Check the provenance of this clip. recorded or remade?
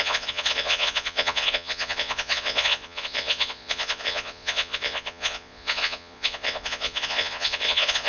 remade